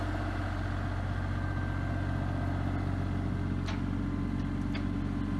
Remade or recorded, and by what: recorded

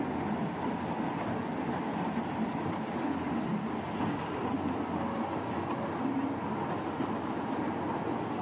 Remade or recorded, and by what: recorded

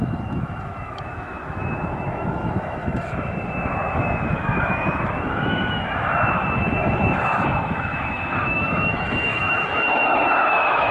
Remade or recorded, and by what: remade, autoencoder, DAC-VAE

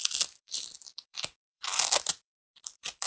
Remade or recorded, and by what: remade, vocoder, BigVGAN v2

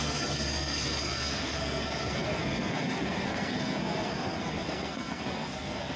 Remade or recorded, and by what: remade, codec, SNAC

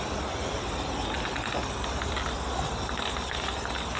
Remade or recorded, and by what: recorded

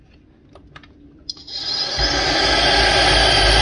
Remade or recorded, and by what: recorded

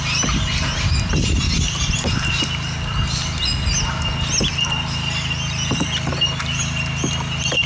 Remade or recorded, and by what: recorded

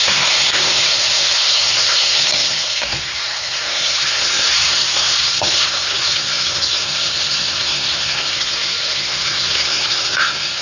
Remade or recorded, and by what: remade, codec, SNAC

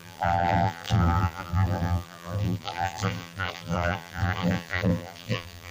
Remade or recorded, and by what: remade, vocoder, BigVGAN v2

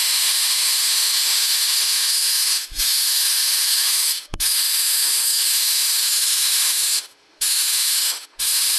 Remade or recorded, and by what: remade, autoencoder, DAC-VAE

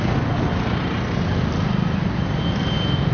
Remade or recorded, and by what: recorded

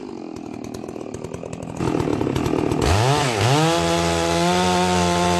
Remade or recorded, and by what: recorded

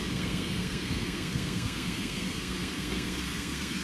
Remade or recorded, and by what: remade, codec, SNAC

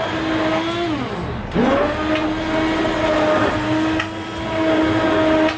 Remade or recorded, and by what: recorded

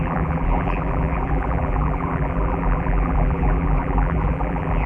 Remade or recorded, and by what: remade, vocoder, BigVGAN v2